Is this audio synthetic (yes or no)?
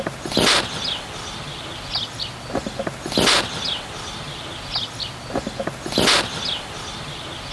no